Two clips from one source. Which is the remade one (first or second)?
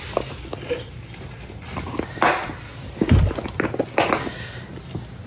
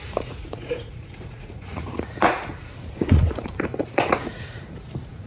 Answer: second